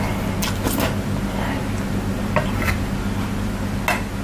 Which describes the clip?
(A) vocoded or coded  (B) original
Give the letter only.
B